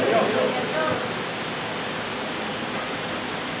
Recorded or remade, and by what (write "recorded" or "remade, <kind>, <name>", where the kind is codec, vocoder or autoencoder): recorded